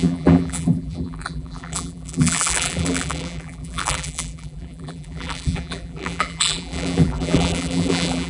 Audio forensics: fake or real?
fake